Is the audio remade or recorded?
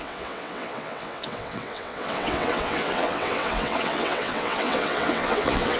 remade